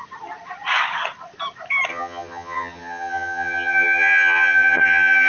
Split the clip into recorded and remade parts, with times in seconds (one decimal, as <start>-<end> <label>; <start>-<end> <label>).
0.0-1.9 recorded; 1.9-5.3 remade